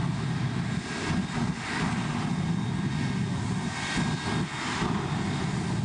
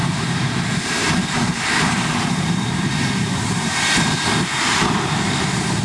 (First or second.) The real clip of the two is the first